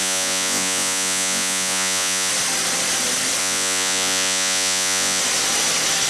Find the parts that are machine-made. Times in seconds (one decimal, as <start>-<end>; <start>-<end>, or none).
0.0-2.3; 3.4-5.2